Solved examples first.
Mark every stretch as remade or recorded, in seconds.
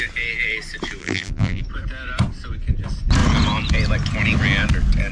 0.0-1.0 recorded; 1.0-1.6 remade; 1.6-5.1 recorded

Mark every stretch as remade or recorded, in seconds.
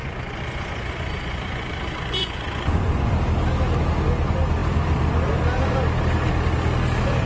0.0-3.1 remade; 3.1-7.3 recorded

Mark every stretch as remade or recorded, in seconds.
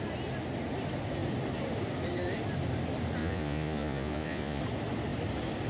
0.0-3.2 recorded; 3.2-4.6 remade; 4.6-5.7 recorded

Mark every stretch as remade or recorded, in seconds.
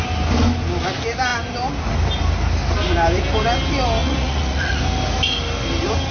0.0-4.0 recorded; 4.0-4.8 remade; 4.8-6.1 recorded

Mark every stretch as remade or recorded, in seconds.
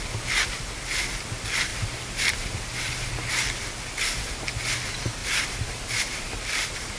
0.0-1.7 recorded; 1.7-3.3 remade; 3.3-5.2 recorded; 5.2-6.3 remade; 6.3-7.0 recorded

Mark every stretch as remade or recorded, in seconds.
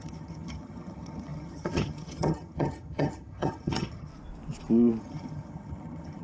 0.0-4.1 remade; 4.1-5.0 recorded; 5.0-6.2 remade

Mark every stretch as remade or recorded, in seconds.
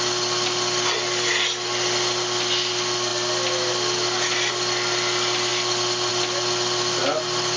0.0-7.6 recorded